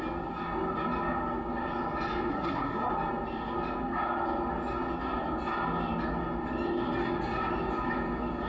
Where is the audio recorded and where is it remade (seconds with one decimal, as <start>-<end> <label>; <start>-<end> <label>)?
0.0-2.3 recorded; 2.3-2.9 remade; 2.9-8.5 recorded

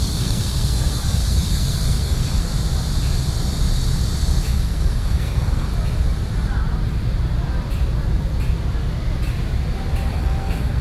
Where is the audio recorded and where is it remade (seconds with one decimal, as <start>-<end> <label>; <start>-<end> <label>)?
0.0-2.5 remade; 2.5-4.4 recorded; 4.4-5.7 remade; 5.7-10.1 recorded; 10.1-10.8 remade

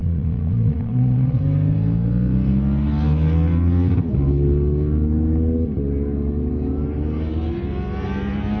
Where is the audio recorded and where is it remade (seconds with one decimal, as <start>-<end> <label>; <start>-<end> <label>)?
0.0-1.4 remade; 1.4-8.6 recorded